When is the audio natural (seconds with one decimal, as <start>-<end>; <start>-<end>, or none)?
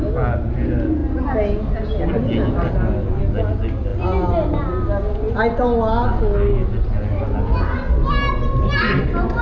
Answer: 0.0-9.4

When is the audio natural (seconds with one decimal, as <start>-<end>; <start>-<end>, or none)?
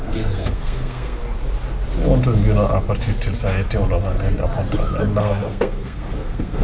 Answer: 1.2-5.2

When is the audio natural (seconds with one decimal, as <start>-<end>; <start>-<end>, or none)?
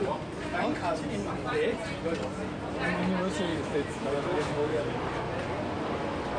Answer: 0.0-3.5; 4.8-6.4